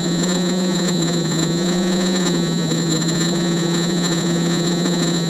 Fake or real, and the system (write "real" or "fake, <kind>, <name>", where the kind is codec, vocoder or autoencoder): fake, vocoder, Vocos